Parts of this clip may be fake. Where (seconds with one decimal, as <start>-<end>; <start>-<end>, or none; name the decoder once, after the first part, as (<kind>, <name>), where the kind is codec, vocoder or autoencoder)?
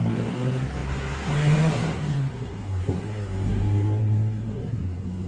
0.0-5.3 (codec, SNAC)